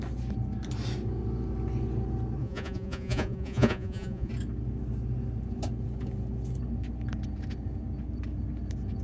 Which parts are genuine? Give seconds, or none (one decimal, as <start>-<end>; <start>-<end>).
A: 0.0-2.4; 4.3-9.0